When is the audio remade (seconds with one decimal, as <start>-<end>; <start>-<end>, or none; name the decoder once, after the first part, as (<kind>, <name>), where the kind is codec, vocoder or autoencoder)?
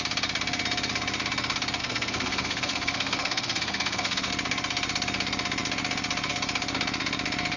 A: 1.8-4.3 (codec, SNAC)